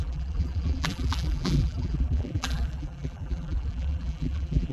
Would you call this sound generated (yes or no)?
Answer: yes